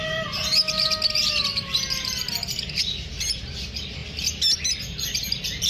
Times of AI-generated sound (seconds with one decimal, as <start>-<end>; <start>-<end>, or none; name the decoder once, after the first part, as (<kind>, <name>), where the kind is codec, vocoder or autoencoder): none